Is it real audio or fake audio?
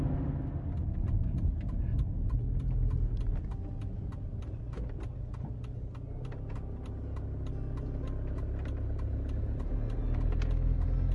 real